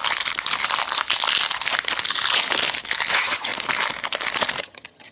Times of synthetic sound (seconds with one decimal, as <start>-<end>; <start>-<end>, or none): 3.1-3.5; 4.6-5.1